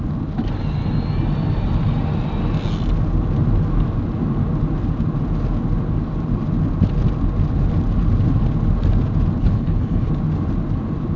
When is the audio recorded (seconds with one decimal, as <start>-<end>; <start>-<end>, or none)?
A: 0.0-9.4; 10.1-11.2